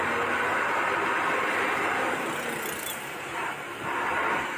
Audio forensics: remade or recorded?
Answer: recorded